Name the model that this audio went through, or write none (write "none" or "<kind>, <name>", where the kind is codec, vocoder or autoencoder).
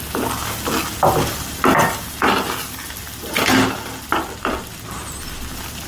none